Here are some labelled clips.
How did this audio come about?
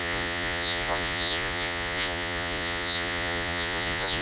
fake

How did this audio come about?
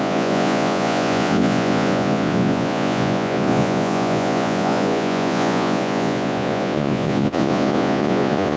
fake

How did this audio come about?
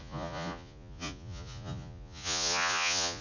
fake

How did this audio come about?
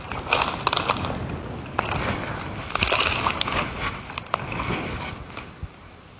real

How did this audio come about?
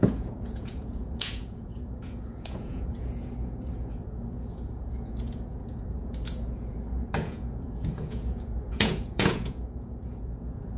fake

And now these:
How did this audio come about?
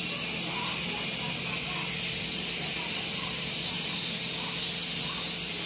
real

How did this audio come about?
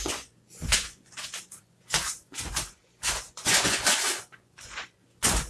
fake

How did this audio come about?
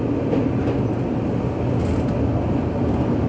real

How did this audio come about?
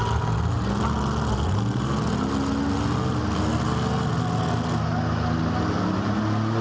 real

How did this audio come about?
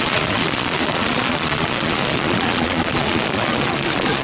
fake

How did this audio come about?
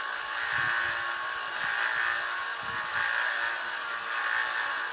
real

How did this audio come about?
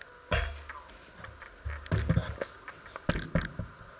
real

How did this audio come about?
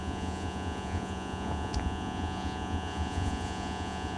fake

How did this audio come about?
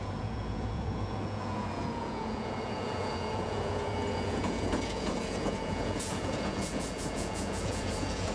fake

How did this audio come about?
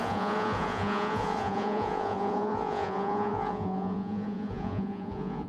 fake